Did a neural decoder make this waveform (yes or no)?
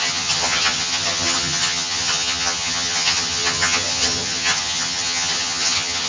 yes